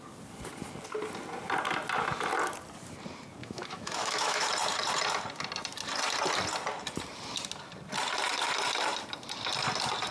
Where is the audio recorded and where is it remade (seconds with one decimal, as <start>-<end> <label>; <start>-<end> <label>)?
0.0-3.4 recorded; 3.4-4.5 remade; 4.5-10.1 recorded